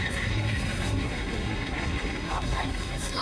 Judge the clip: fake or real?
fake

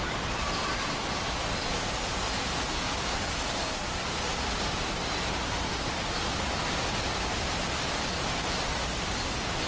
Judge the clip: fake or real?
real